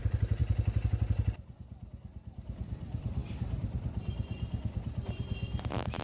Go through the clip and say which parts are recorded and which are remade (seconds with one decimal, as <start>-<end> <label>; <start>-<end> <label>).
0.0-0.4 remade; 0.4-1.5 recorded; 1.5-6.0 remade